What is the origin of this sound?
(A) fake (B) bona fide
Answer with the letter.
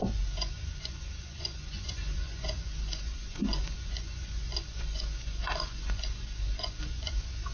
A